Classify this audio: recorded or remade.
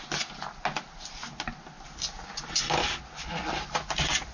recorded